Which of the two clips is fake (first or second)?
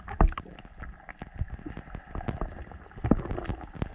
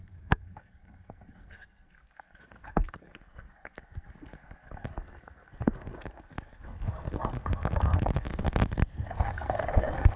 second